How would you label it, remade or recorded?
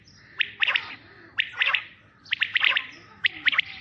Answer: remade